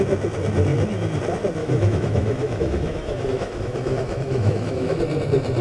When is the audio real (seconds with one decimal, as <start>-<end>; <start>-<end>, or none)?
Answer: 0.0-1.6; 5.0-5.6